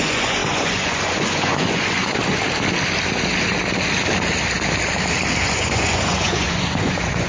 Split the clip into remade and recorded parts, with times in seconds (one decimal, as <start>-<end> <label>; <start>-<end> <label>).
0.0-2.2 remade; 2.2-5.4 recorded; 5.4-7.3 remade